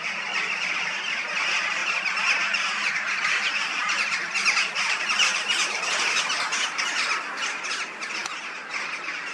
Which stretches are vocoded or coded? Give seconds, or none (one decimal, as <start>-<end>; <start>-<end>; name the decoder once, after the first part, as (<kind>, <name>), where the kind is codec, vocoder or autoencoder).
1.8-6.2 (vocoder, BigVGAN v2)